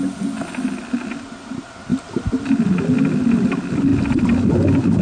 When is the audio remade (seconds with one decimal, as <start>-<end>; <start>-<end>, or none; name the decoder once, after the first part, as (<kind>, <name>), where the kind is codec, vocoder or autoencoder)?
none